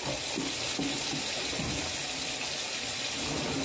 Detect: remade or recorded recorded